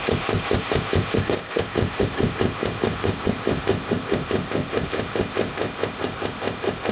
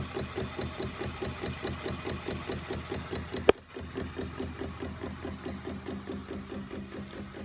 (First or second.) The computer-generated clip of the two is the first